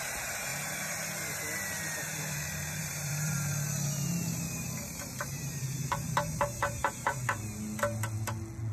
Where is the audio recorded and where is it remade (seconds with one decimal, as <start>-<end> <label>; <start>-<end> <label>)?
0.0-0.5 remade; 0.5-2.3 recorded; 2.3-3.5 remade; 3.5-5.2 recorded; 5.2-7.2 remade; 7.2-8.7 recorded